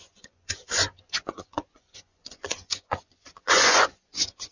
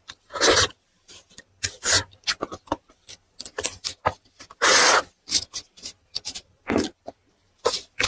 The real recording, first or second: second